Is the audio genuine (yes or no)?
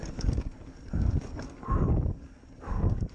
no